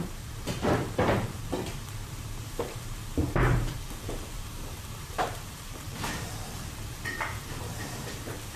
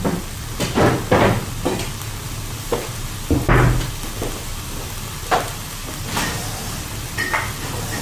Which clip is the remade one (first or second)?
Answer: first